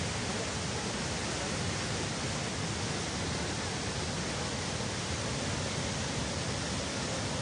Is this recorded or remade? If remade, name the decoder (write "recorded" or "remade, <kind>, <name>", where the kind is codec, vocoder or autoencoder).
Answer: recorded